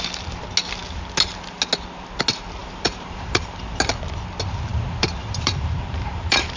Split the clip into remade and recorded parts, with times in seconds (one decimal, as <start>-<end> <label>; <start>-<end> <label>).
0.0-2.6 recorded; 2.6-3.8 remade; 3.8-4.7 recorded; 4.7-6.6 remade